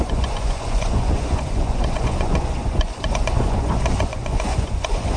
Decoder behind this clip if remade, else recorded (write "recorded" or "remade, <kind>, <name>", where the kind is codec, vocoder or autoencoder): remade, vocoder, Vocos